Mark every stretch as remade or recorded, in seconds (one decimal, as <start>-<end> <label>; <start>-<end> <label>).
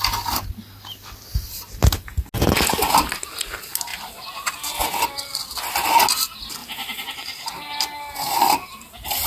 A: 0.0-3.9 recorded; 3.9-4.5 remade; 4.5-9.3 recorded